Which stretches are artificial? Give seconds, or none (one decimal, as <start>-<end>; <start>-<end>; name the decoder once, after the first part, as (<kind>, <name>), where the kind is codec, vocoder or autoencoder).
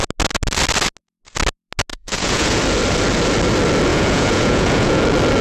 1.9-2.6 (vocoder, Vocos); 3.9-5.0